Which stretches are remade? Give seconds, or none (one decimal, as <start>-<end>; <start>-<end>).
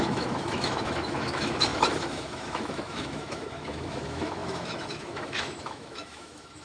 0.0-6.6